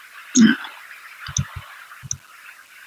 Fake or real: real